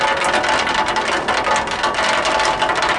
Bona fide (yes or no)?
yes